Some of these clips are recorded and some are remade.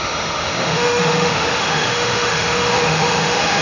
remade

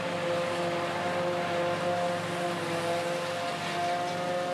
recorded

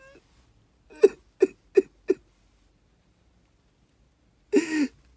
recorded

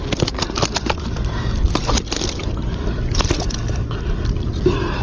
recorded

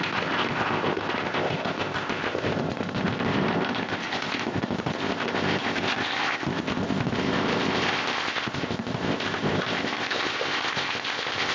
remade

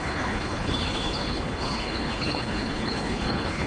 remade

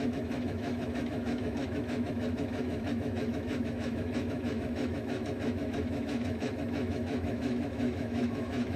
remade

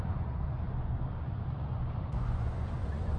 remade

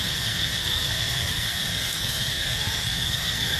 remade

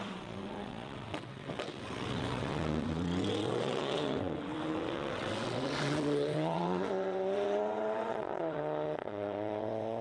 remade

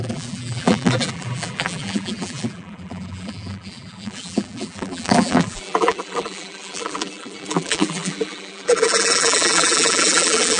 remade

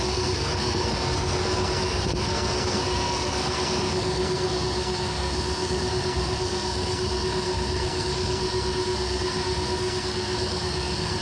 remade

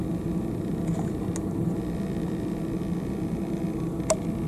recorded